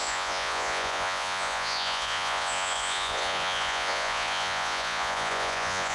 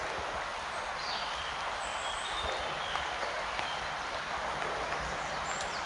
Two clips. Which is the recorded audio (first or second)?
second